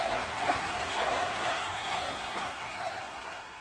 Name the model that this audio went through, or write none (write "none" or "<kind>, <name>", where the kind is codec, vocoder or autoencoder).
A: codec, SNAC